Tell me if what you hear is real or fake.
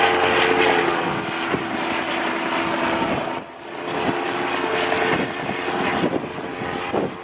real